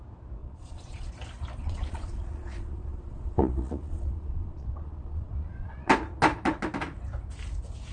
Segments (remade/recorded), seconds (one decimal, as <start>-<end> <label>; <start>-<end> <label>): 0.0-0.4 recorded; 0.4-1.1 remade; 1.1-1.6 recorded; 1.6-5.9 remade; 5.9-7.9 recorded